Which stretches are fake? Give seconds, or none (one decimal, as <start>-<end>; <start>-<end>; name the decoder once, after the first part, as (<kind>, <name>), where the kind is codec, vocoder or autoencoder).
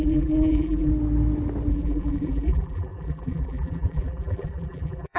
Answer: 0.0-0.9 (vocoder, BigVGAN v2); 1.7-5.2